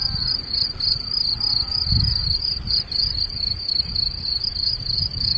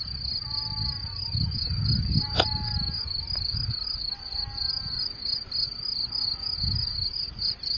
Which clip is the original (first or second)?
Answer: second